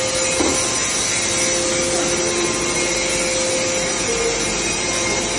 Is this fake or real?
real